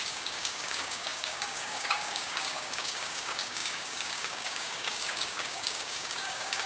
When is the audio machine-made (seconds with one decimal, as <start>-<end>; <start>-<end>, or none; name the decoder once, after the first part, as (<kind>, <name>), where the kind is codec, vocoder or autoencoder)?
0.0-6.7 (codec, DAC)